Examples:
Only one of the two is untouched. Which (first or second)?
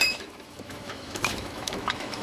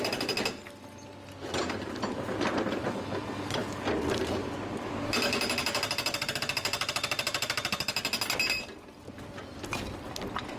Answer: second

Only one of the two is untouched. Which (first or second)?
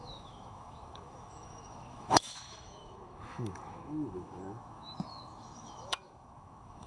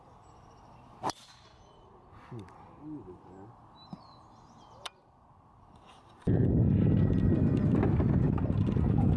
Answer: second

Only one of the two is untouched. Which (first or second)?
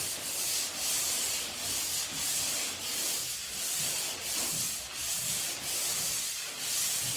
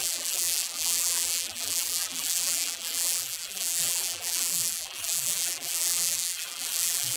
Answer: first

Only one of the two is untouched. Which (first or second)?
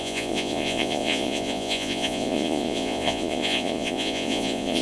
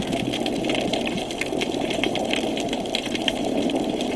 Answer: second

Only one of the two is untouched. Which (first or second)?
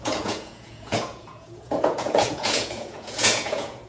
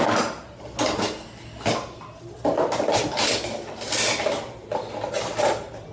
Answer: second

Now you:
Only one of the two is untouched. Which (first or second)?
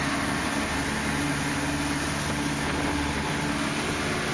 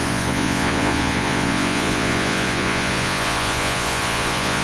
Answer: first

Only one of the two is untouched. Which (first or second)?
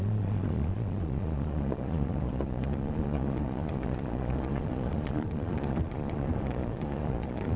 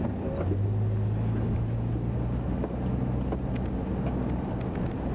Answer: second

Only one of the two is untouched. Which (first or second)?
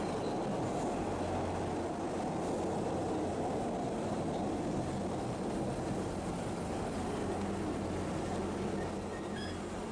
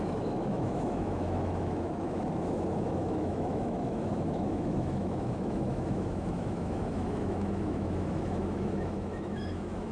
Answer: first